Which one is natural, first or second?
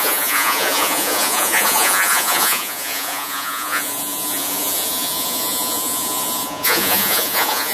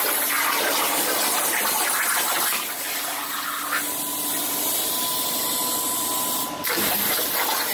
second